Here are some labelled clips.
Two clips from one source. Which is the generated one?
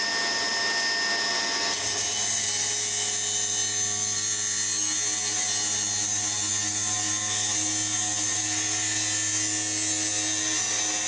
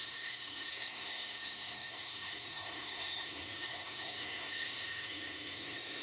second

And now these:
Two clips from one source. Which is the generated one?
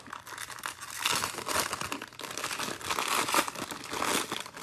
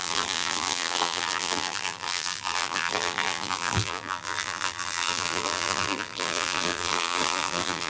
second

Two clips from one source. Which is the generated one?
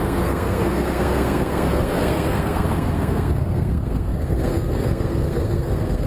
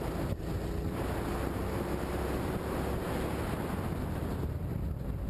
first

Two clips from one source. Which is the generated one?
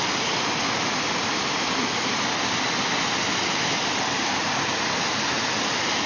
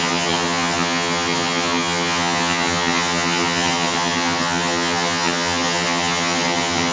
second